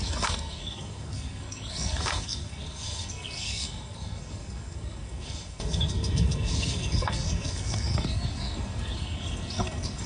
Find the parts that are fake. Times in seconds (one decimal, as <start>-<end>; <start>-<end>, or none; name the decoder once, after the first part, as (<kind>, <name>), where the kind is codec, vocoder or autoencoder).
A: 0.0-10.1 (codec, SNAC)